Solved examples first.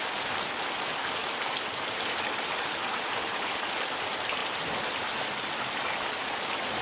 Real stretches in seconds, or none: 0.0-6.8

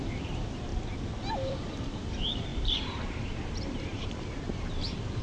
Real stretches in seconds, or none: 0.7-1.3

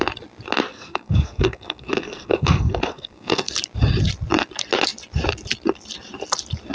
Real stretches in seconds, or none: 0.0-0.7; 3.5-6.7

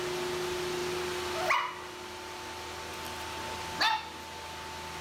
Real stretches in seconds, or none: 0.0-5.0